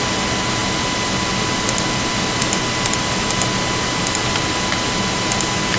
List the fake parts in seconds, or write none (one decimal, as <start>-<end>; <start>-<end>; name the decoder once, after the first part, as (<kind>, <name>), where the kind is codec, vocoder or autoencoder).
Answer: none